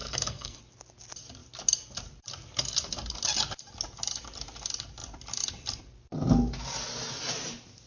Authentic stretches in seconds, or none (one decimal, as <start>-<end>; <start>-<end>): 0.6-7.9